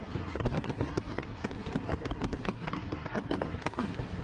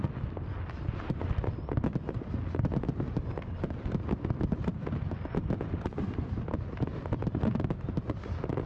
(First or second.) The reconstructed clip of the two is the first